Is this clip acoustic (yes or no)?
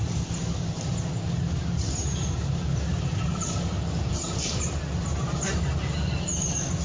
yes